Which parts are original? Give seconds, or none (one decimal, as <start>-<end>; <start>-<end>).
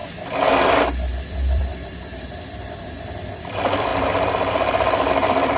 0.0-0.7; 3.9-5.1